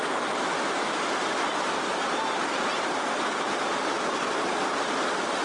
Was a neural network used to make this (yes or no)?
no